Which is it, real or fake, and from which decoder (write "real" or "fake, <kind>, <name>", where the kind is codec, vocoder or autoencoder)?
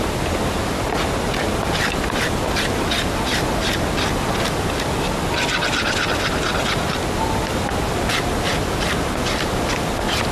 real